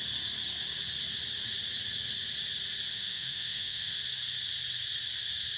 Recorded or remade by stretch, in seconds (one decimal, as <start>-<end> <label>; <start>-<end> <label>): 0.0-2.9 recorded; 2.9-4.0 remade; 4.0-5.6 recorded